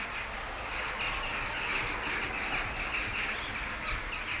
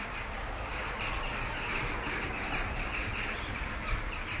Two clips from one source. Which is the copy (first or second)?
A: second